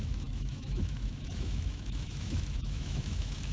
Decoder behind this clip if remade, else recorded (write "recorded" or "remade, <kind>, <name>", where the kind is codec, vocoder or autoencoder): remade, autoencoder, DAC-VAE